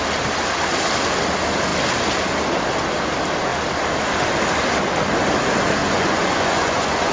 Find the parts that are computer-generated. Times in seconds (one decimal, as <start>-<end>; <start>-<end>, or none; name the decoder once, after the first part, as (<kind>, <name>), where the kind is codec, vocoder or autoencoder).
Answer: 5.8-7.1 (vocoder, Vocos)

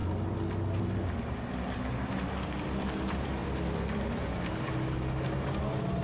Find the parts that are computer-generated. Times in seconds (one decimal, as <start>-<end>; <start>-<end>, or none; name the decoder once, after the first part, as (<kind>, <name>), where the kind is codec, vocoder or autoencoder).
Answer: none

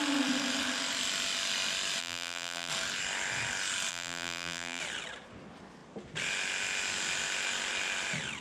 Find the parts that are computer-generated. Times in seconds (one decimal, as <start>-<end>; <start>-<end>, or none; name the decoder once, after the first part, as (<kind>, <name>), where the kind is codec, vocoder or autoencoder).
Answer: 2.0-2.7 (vocoder, BigVGAN v2); 3.9-4.8

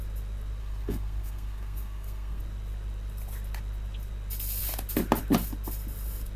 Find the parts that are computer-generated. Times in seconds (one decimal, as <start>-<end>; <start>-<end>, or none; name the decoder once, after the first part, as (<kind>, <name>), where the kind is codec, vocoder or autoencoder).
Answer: 0.6-2.4 (codec, SNAC)

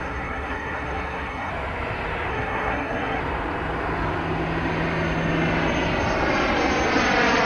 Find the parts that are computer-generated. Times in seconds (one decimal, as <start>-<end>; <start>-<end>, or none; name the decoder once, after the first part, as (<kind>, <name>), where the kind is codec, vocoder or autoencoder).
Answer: 0.0-1.5 (codec, SNAC); 2.3-3.2